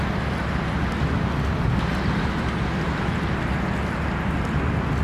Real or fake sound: real